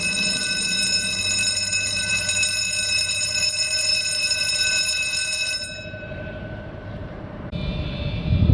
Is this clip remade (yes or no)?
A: yes